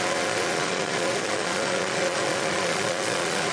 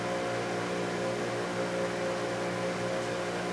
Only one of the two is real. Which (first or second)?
second